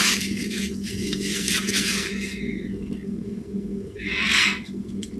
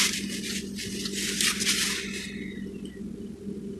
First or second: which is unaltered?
second